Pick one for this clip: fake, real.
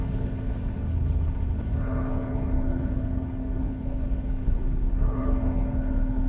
fake